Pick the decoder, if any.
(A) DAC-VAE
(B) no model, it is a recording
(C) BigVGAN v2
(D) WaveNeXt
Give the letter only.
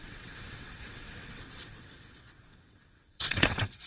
D